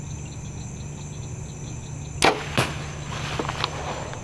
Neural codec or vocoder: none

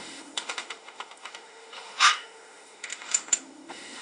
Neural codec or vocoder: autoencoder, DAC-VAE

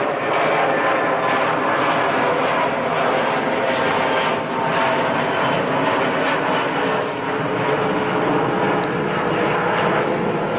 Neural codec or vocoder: none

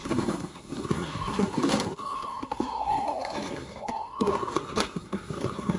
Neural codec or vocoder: codec, SNAC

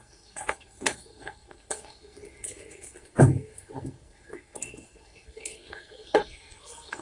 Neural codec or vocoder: codec, SNAC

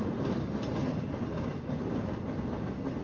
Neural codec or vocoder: none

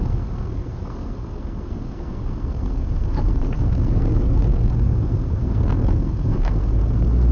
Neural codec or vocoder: codec, SNAC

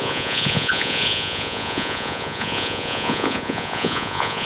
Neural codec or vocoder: vocoder, Vocos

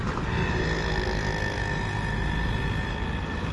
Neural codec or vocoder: none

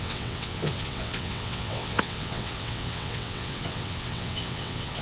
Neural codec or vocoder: vocoder, WaveNeXt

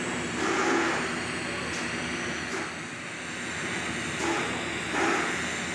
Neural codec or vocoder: none